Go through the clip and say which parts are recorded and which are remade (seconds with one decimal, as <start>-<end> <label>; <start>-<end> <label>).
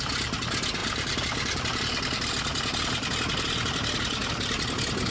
0.0-0.8 recorded; 0.8-2.3 remade; 2.3-5.1 recorded